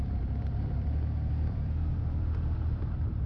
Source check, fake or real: fake